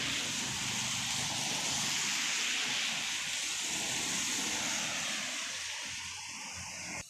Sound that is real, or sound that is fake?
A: real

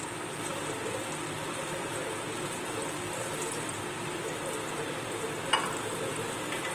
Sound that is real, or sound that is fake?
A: real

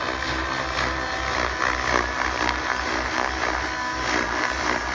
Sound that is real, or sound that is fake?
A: real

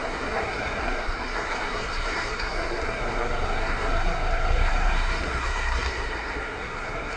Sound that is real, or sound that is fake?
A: fake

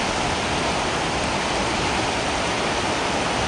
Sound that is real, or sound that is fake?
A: real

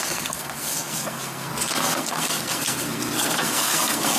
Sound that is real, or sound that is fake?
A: fake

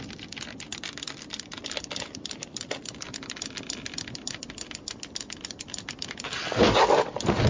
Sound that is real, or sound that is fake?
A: fake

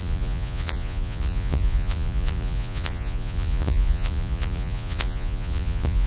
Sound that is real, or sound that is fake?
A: fake